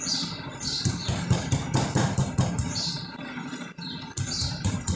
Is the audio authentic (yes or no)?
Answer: yes